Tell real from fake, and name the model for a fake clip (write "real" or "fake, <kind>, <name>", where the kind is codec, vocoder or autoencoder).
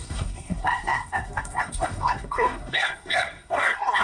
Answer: fake, codec, SNAC